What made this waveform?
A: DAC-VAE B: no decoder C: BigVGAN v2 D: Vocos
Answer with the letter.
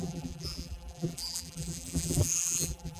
C